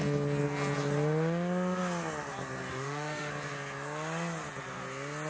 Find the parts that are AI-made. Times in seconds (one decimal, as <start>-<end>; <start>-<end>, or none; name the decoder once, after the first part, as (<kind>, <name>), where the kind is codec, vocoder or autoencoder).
2.7-3.3 (autoencoder, DAC-VAE)